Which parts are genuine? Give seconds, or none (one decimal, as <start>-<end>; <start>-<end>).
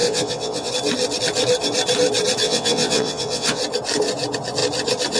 0.7-2.4; 3.6-5.2